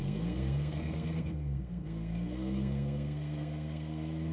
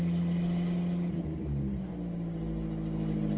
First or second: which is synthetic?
first